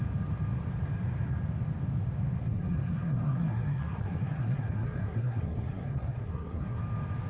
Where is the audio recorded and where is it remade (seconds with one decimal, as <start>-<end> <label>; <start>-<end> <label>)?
0.0-2.4 recorded; 2.4-6.8 remade; 6.8-7.3 recorded